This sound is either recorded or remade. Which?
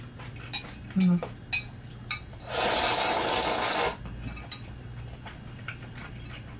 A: recorded